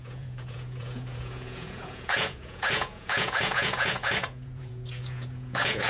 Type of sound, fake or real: fake